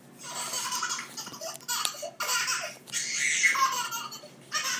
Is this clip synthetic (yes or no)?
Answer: no